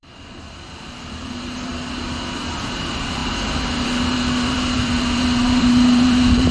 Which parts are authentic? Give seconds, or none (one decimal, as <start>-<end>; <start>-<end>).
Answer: 1.7-2.6